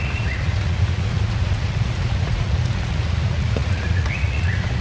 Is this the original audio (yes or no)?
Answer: no